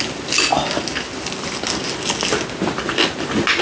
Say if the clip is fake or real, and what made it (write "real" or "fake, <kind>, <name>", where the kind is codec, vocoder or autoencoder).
real